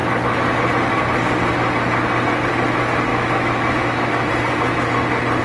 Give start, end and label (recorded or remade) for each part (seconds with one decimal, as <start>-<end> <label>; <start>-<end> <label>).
0.0-3.1 recorded; 3.1-4.3 remade; 4.3-5.4 recorded